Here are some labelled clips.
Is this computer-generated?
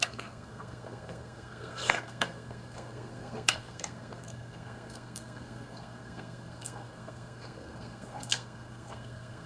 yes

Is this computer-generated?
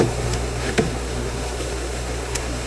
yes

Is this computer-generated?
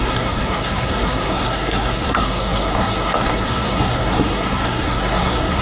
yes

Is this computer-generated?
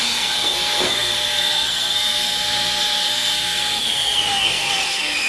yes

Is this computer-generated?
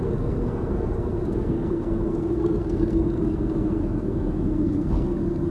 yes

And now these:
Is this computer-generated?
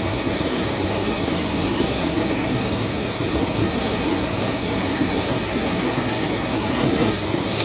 yes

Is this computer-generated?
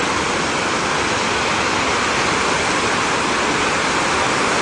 no